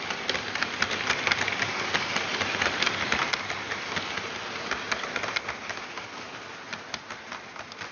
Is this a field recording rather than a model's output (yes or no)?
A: yes